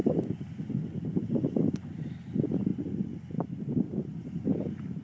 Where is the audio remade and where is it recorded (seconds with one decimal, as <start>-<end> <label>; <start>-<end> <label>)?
0.0-5.0 recorded